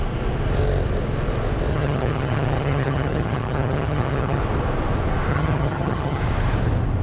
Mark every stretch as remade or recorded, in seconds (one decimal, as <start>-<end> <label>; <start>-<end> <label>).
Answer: 0.0-1.7 recorded; 1.7-4.4 remade; 4.4-5.3 recorded; 5.3-6.2 remade; 6.2-7.0 recorded

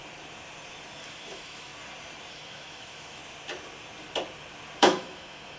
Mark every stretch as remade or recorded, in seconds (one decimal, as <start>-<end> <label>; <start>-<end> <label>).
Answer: 0.0-1.0 recorded; 1.0-1.7 remade; 1.7-2.3 recorded; 2.3-3.2 remade; 3.2-4.8 recorded; 4.8-5.6 remade

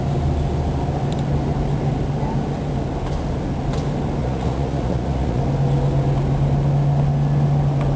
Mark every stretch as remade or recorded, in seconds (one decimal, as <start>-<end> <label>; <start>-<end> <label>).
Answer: 0.0-4.2 recorded; 4.2-5.4 remade; 5.4-8.0 recorded

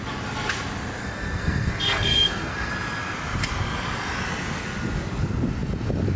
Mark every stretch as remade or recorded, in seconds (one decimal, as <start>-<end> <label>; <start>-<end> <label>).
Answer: 0.0-1.0 recorded; 1.0-2.7 remade; 2.7-6.2 recorded

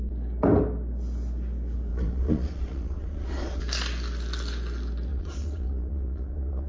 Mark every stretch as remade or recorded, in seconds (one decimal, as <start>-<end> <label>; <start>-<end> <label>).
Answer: 0.0-1.9 recorded; 1.9-3.6 remade; 3.6-5.1 recorded; 5.1-6.7 remade

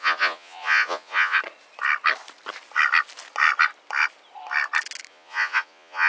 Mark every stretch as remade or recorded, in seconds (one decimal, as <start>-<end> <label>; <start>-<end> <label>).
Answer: 0.0-1.4 remade; 1.4-5.1 recorded; 5.1-6.1 remade